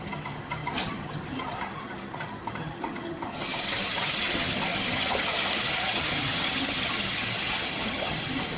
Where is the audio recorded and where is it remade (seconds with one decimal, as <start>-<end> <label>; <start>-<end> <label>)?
0.0-8.6 remade